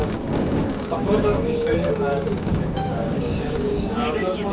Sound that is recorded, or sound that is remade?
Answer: remade